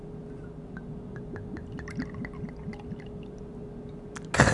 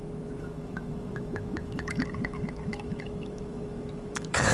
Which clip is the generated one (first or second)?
second